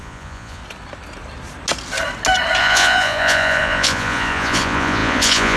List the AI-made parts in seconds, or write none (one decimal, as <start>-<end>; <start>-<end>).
0.0-0.6; 2.6-5.6